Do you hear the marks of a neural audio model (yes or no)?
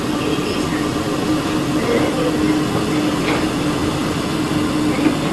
no